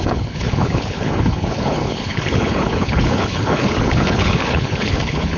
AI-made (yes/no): yes